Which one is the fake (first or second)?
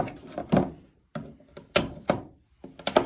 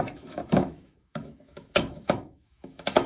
second